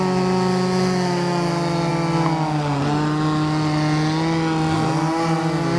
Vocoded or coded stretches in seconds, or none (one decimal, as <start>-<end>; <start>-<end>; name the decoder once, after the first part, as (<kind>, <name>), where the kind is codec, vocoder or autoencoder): none